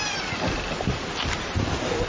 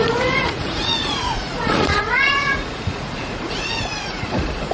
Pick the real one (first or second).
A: first